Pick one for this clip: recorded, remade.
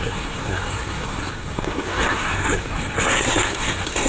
remade